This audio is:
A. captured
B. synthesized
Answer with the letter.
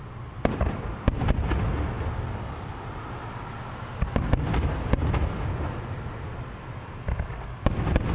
A